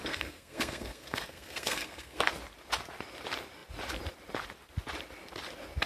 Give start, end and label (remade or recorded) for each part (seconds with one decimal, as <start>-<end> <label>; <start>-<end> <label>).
0.0-2.2 remade; 2.2-5.9 recorded